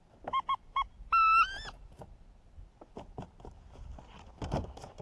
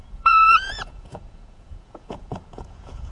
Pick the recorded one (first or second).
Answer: first